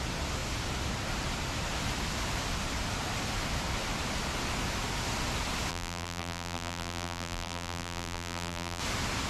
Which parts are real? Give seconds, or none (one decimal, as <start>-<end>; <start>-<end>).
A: 0.0-5.7; 8.8-9.3